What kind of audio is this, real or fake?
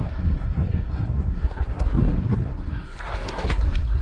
fake